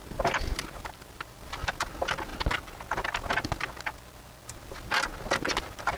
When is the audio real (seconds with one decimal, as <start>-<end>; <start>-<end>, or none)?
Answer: 1.9-6.0